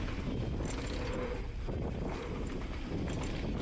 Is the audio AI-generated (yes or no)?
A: no